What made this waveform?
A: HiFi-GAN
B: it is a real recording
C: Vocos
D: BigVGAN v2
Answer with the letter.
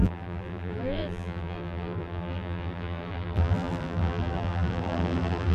D